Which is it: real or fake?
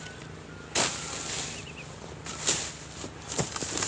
real